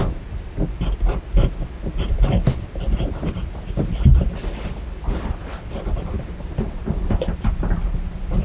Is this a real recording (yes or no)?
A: no